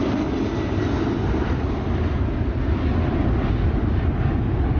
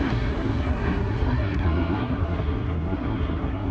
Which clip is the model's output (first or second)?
second